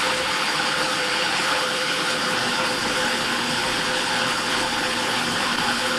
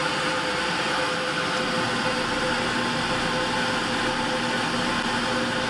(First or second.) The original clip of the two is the second